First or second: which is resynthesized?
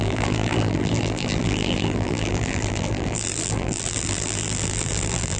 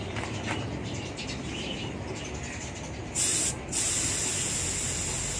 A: first